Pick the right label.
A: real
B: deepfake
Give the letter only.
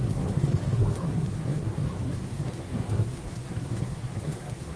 B